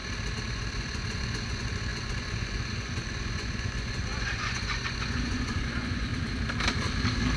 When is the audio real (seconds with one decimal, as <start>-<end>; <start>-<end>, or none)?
0.0-0.5; 6.1-7.4